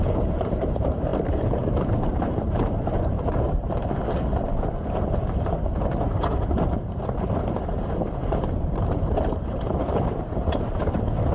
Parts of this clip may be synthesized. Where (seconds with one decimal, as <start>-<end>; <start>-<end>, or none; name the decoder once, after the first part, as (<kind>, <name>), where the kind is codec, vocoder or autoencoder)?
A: 0.0-11.3 (vocoder, BigVGAN v2)